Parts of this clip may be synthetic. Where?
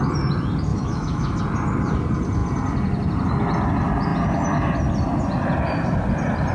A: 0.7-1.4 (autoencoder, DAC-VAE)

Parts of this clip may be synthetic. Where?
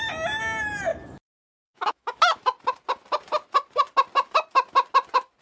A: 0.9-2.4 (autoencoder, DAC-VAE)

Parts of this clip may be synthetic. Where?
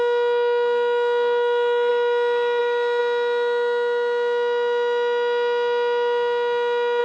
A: 0.0-3.0 (autoencoder, DAC-VAE)